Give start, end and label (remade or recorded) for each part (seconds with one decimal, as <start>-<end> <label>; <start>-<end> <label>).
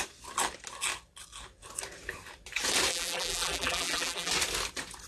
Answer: 0.0-2.9 recorded; 2.9-4.3 remade; 4.3-5.1 recorded